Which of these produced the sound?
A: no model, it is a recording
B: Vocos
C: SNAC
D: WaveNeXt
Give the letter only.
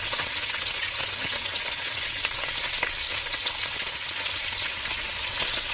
D